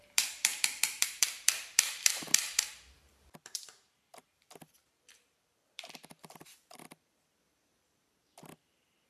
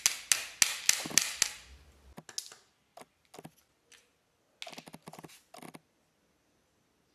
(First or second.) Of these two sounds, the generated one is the first